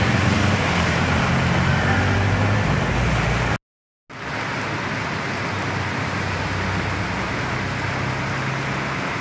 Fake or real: real